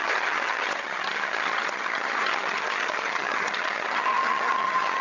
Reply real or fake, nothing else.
fake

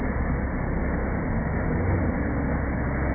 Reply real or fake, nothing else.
real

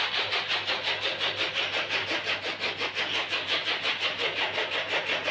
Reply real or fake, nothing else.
real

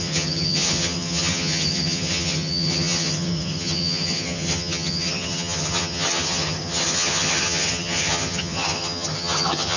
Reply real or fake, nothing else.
fake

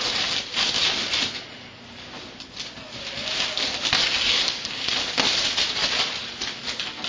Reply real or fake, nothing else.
real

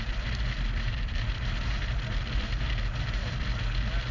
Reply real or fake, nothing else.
real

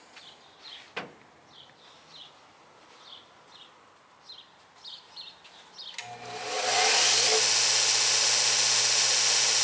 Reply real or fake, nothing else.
real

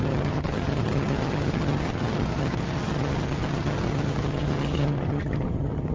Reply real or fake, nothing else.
fake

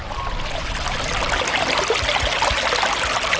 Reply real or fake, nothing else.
real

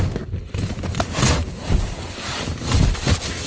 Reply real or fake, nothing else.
real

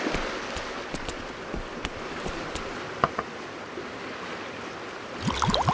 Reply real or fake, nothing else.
real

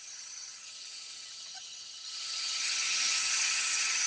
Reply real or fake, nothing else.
fake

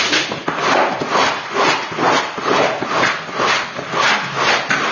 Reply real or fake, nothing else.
real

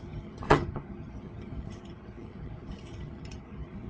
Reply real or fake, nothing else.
fake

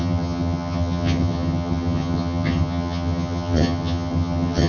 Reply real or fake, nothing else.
fake